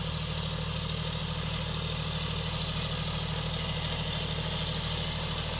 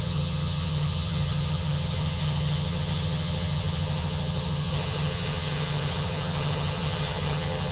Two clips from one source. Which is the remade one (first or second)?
second